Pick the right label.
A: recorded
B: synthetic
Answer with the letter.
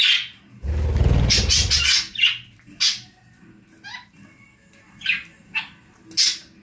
A